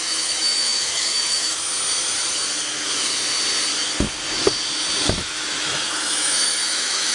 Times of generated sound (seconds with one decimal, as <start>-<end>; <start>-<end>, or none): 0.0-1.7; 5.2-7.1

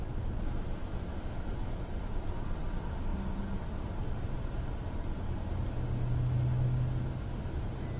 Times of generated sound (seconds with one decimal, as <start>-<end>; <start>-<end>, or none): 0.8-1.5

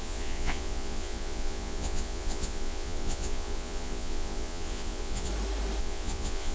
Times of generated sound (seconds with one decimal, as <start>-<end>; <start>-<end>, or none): 0.0-5.3; 5.8-6.5